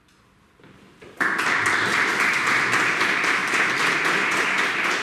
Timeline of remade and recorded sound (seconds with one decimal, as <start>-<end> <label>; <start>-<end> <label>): 0.0-3.4 remade; 3.4-5.0 recorded